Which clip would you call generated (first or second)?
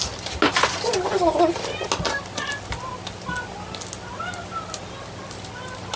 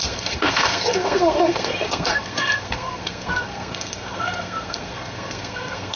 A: second